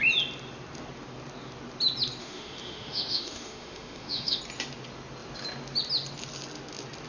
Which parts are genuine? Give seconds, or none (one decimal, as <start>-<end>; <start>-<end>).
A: 0.0-2.2; 4.4-7.1